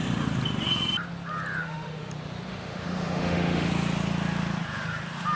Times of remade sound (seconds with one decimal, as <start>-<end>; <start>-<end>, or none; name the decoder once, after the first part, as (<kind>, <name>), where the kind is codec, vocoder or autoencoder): 1.6-2.1 (autoencoder, DAC-VAE); 2.5-3.7